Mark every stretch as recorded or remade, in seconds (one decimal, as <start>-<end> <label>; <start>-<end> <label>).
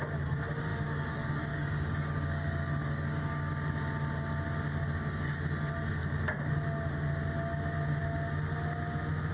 0.0-0.7 recorded; 0.7-3.5 remade; 3.5-9.3 recorded